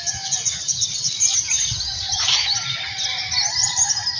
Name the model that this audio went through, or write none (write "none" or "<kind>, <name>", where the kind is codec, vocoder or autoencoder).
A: none